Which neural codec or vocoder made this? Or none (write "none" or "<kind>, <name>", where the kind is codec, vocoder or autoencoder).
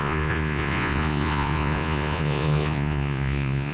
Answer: vocoder, Vocos